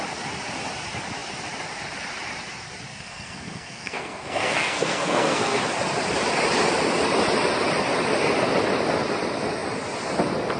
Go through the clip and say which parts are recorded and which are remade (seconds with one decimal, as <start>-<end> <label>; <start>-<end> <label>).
0.0-2.9 recorded; 2.9-5.6 remade; 5.6-10.6 recorded